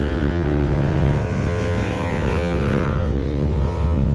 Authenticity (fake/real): fake